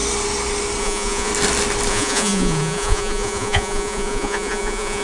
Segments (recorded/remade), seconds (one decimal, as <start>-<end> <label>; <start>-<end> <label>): 0.0-0.8 recorded; 0.8-1.3 remade; 1.3-1.9 recorded; 1.9-5.0 remade